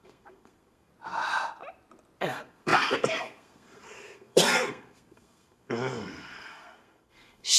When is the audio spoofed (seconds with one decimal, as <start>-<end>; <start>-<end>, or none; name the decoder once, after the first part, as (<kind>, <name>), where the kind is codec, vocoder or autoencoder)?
0.0-0.9 (codec, SNAC); 2.2-7.6